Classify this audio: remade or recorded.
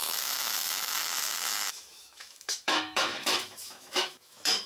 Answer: remade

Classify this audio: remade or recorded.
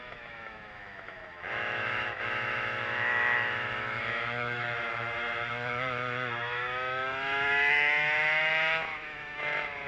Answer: remade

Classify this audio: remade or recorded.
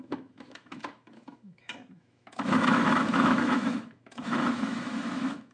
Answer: remade